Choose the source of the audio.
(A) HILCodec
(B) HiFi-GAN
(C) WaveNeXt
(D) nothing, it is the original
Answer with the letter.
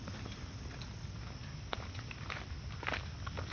D